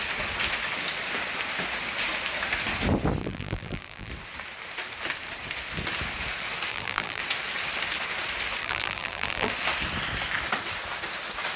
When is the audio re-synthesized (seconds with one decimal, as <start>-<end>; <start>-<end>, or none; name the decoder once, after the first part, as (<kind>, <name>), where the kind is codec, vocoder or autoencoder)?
3.2-4.1 (vocoder, BigVGAN v2); 6.7-7.2; 8.6-9.5

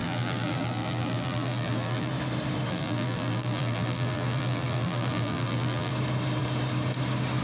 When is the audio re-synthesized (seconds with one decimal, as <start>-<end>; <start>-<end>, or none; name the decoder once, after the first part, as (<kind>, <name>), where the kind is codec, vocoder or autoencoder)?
0.0-2.1 (vocoder, BigVGAN v2); 2.7-5.9

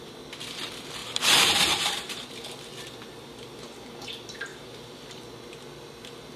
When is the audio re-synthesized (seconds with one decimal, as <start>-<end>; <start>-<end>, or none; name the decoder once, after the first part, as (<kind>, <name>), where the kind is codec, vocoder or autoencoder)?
1.0-2.3 (vocoder, BigVGAN v2); 4.5-5.2

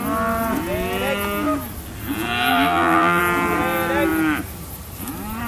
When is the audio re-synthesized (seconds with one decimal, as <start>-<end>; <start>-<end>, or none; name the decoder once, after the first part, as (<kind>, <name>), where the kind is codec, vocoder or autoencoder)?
2.5-3.2 (vocoder, BigVGAN v2)

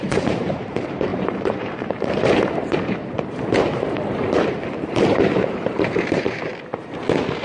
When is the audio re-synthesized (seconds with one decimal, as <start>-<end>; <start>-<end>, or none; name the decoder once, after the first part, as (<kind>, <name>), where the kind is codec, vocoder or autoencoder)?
0.0-6.5 (vocoder, BigVGAN v2)

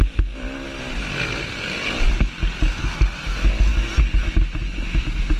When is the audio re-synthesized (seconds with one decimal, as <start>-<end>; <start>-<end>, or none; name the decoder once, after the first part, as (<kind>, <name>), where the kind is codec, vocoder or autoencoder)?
none

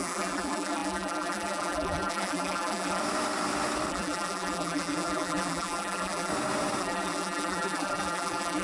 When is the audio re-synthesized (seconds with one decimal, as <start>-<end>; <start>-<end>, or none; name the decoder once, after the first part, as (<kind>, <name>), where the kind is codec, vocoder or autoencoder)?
0.0-3.0 (vocoder, BigVGAN v2); 3.9-6.3; 6.8-8.6